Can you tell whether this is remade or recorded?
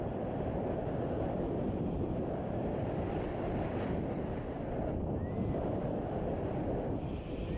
remade